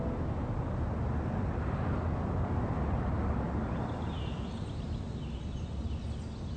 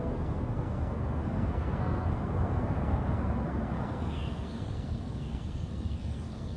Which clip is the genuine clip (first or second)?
first